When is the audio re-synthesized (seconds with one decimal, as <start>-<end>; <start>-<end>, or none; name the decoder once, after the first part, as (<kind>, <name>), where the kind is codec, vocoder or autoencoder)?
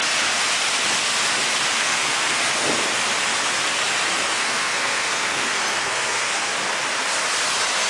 1.7-2.4 (codec, SNAC); 4.3-6.5